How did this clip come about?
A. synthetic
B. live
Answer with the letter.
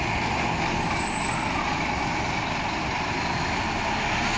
B